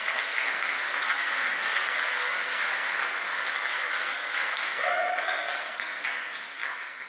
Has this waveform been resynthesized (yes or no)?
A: yes